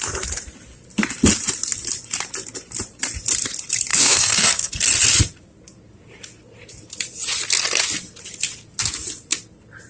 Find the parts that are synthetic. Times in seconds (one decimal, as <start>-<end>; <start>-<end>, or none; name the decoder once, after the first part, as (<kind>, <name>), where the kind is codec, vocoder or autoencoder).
3.9-4.7 (codec, SNAC)